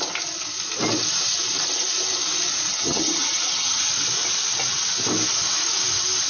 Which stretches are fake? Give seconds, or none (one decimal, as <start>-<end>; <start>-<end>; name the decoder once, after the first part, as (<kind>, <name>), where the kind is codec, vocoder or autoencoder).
2.7-3.9 (vocoder, HiFi-GAN)